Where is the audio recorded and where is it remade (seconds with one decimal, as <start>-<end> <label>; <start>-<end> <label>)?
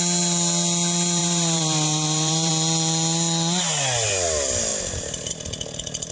0.0-1.2 recorded; 1.2-2.5 remade; 2.5-4.7 recorded; 4.7-5.3 remade; 5.3-6.1 recorded